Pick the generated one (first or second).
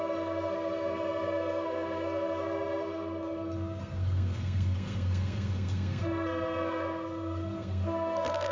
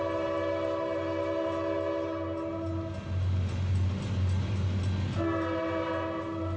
first